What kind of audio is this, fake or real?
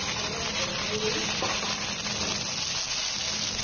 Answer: real